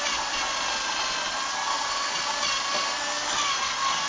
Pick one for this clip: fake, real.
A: real